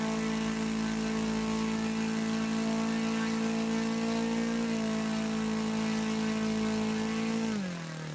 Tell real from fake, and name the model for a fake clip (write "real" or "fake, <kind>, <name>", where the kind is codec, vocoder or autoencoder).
real